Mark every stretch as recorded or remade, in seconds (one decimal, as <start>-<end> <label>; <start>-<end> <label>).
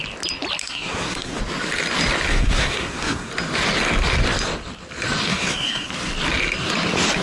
0.0-0.6 recorded; 0.6-1.4 remade; 1.4-2.3 recorded; 2.3-3.3 remade; 3.3-5.3 recorded; 5.3-5.9 remade; 5.9-7.2 recorded